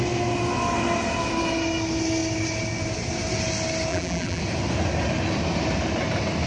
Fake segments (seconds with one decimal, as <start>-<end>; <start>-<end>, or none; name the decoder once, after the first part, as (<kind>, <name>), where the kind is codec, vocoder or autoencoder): 3.9-4.4 (vocoder, BigVGAN v2)